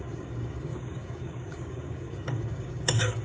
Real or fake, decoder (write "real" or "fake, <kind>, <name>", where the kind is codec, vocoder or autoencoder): fake, codec, DAC